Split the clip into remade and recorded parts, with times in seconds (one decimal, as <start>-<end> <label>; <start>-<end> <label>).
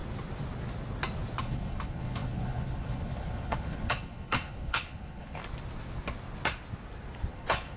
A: 0.0-1.4 recorded; 1.4-5.4 remade; 5.4-7.3 recorded; 7.3-7.8 remade